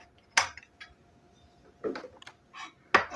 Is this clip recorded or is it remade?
recorded